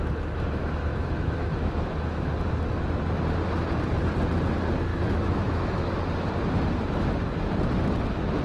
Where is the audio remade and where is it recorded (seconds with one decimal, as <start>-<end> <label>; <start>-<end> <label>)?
0.0-0.6 recorded; 0.6-2.3 remade; 2.3-4.9 recorded; 4.9-6.0 remade; 6.0-8.4 recorded